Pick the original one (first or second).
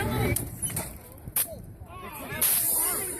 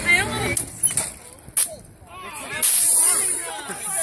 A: second